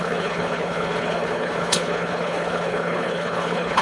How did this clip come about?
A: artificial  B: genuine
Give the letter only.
A